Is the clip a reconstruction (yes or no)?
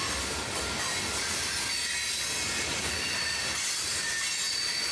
no